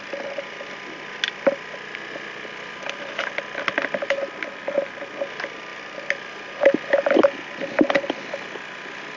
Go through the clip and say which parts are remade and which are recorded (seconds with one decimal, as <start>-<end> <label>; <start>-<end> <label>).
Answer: 0.0-9.2 recorded